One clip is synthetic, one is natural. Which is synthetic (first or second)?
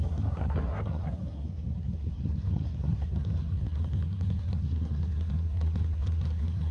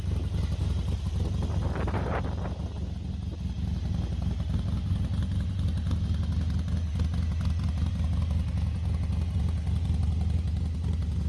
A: first